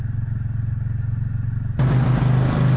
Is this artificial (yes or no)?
no